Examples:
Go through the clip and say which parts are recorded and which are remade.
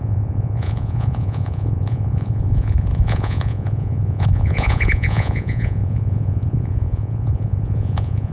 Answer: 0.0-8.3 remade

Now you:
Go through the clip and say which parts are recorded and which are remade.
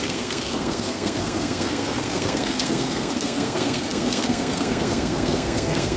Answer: 0.0-6.0 remade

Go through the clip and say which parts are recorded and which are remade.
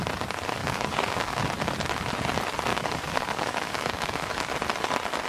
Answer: 0.0-0.6 recorded; 0.6-1.4 remade; 1.4-2.7 recorded; 2.7-4.5 remade; 4.5-5.3 recorded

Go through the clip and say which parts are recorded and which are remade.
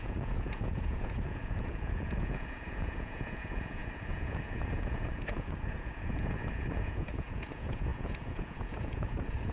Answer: 0.0-9.5 remade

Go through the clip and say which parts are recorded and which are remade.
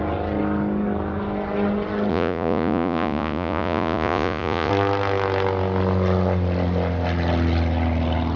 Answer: 0.0-2.1 recorded; 2.1-4.7 remade; 4.7-8.4 recorded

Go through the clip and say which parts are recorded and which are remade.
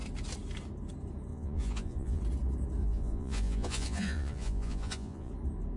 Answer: 0.0-1.3 recorded; 1.3-2.2 remade; 2.2-2.8 recorded; 2.8-5.3 remade; 5.3-5.8 recorded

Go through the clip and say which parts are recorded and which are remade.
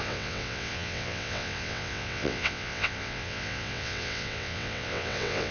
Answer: 0.0-5.5 remade